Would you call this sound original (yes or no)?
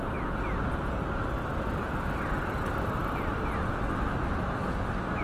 yes